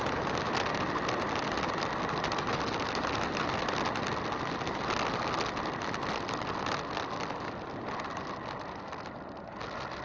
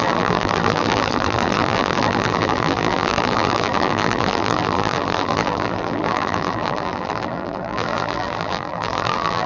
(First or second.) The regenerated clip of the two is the second